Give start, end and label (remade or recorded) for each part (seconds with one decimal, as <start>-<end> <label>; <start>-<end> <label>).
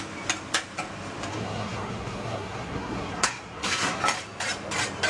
0.0-1.3 recorded; 1.3-4.0 remade; 4.0-5.1 recorded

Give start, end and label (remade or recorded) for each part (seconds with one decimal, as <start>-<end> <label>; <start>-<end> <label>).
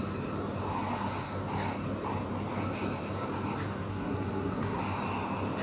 0.0-3.9 recorded; 3.9-4.8 remade; 4.8-5.6 recorded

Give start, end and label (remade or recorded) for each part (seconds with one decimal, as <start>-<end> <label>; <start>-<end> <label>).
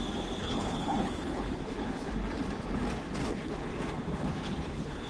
0.0-0.4 recorded; 0.4-2.1 remade; 2.1-3.2 recorded; 3.2-3.8 remade; 3.8-4.3 recorded; 4.3-5.1 remade